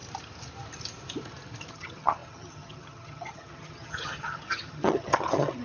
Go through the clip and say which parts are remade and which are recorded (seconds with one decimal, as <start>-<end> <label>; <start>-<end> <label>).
0.0-1.7 recorded; 1.7-5.6 remade